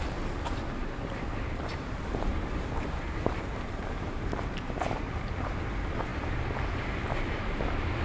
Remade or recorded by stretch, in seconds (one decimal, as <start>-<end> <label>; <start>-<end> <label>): 0.0-0.8 recorded; 0.8-5.4 remade; 5.4-8.0 recorded